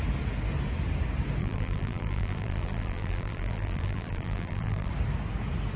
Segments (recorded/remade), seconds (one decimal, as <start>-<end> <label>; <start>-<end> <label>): 0.0-1.4 recorded; 1.4-4.9 remade; 4.9-5.8 recorded